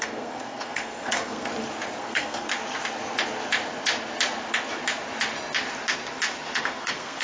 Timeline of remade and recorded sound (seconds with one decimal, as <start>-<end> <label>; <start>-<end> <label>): 0.0-1.5 remade; 1.5-2.0 recorded; 2.0-2.5 remade; 2.5-6.6 recorded; 6.6-7.2 remade